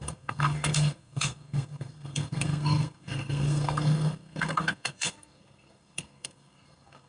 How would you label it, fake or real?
fake